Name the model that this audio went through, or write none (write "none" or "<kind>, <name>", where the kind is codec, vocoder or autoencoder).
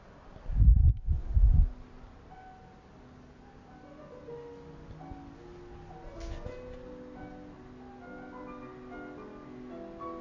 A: none